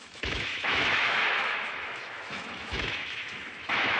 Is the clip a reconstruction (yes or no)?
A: yes